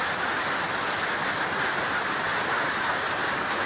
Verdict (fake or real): real